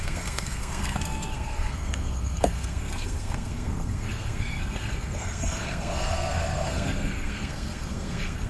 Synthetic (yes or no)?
yes